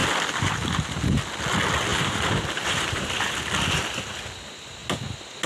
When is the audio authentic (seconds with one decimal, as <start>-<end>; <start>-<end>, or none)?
0.0-1.9; 3.1-5.5